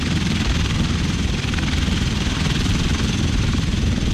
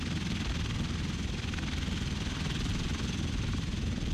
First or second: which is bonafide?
second